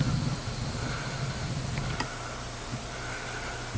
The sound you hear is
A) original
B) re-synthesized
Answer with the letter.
A